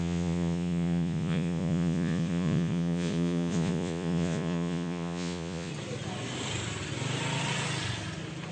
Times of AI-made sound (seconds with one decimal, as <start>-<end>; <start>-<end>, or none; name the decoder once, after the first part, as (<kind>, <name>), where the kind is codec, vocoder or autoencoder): 0.0-5.7 (vocoder, Vocos)